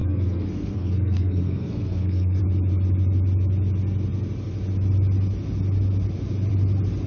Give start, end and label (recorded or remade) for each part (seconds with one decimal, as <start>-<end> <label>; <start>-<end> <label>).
0.0-2.4 remade; 2.4-7.1 recorded